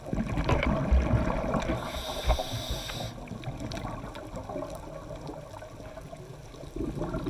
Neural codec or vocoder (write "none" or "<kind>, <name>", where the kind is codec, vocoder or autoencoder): none